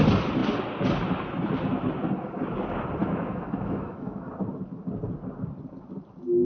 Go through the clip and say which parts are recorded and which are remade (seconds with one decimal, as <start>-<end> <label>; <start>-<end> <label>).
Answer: 0.0-3.0 recorded; 3.0-4.3 remade; 4.3-6.4 recorded